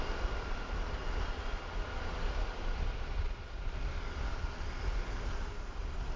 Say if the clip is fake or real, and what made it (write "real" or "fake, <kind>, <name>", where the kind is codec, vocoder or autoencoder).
real